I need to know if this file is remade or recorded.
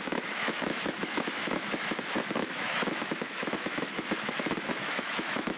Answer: remade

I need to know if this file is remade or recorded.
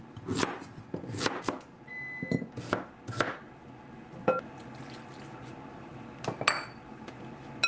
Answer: recorded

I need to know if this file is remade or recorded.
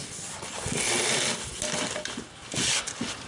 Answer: recorded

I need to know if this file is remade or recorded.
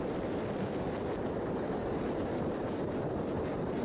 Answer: recorded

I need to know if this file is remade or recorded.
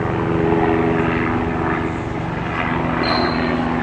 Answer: recorded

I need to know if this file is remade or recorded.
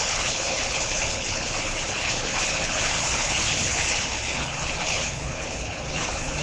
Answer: remade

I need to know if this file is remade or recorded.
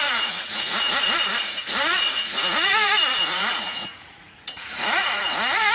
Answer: remade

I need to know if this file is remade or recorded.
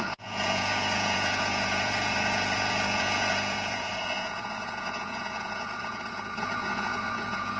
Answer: remade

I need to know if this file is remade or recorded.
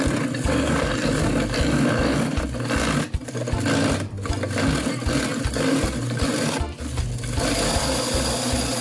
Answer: recorded